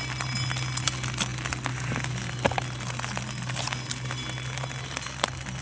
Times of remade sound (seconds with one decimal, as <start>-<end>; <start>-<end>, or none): none